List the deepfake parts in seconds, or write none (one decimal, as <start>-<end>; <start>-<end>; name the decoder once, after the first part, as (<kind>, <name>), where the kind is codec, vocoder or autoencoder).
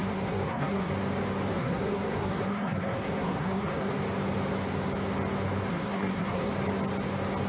0.0-0.9 (codec, SNAC); 1.5-3.9; 5.7-6.5